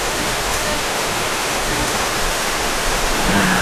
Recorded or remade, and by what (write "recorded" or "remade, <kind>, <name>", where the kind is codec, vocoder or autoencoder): remade, autoencoder, DAC-VAE